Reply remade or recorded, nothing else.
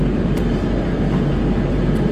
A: recorded